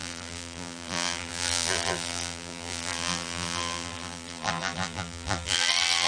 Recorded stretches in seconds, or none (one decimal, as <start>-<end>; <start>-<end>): none